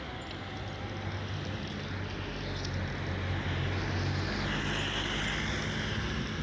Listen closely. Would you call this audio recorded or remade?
recorded